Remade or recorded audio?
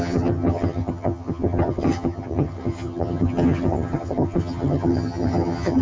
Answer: remade